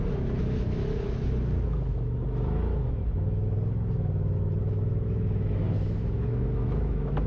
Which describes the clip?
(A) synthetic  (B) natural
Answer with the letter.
A